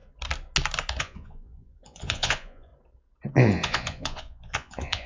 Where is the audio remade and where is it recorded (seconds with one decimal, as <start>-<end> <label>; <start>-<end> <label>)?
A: 0.0-1.0 recorded; 1.0-2.7 remade; 2.7-3.3 recorded; 3.3-5.1 remade